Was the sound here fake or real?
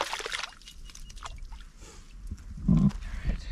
real